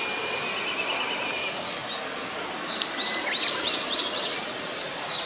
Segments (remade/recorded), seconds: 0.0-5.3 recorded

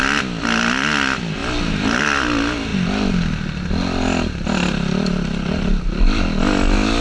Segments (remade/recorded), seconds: 0.0-7.0 recorded

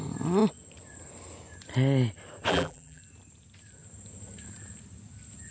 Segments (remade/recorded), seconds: 0.0-2.5 recorded; 2.5-3.0 remade; 3.0-5.5 recorded

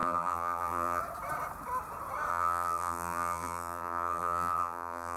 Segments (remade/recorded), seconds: 0.0-1.0 remade; 1.0-2.3 recorded; 2.3-5.2 remade